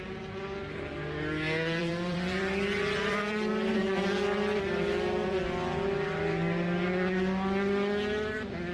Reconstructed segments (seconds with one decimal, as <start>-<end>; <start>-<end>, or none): 1.8-3.5